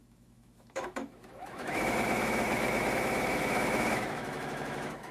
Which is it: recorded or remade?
remade